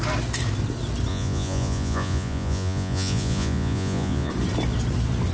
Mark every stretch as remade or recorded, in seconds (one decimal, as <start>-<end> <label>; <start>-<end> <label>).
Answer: 0.0-1.1 recorded; 1.1-4.3 remade; 4.3-5.3 recorded